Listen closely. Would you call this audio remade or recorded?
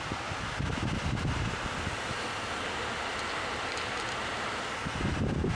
recorded